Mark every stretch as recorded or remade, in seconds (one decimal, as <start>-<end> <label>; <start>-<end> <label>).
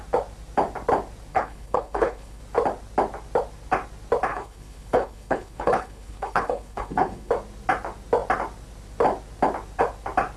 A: 0.0-1.3 recorded; 1.3-2.4 remade; 2.4-4.3 recorded; 4.3-7.3 remade; 7.3-10.4 recorded